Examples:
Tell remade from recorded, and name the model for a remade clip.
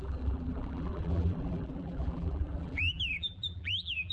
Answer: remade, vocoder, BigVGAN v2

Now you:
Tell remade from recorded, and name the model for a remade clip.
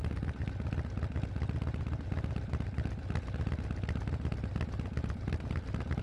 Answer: recorded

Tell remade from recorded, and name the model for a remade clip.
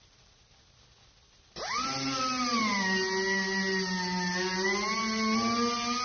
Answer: recorded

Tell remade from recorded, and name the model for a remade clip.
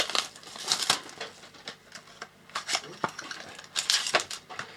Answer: recorded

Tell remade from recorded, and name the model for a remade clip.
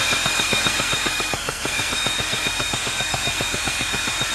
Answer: remade, codec, SNAC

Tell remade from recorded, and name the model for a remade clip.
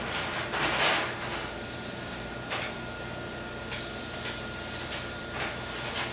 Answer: recorded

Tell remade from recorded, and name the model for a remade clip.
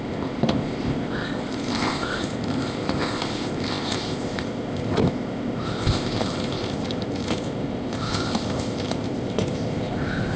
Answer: remade, codec, ZipCodec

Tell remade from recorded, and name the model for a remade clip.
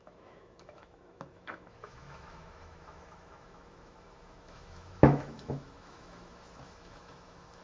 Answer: remade, autoencoder, DAC-VAE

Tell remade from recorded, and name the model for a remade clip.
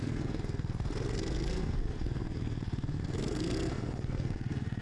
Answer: remade, codec, SNAC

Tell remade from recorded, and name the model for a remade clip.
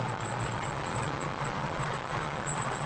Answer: remade, vocoder, Vocos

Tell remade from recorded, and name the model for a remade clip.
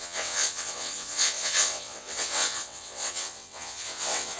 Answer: remade, vocoder, WaveNeXt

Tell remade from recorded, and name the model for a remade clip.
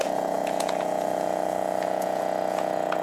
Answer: remade, vocoder, Vocos